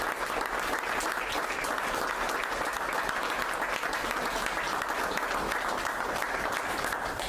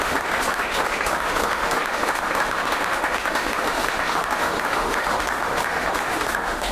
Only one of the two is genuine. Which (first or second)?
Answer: first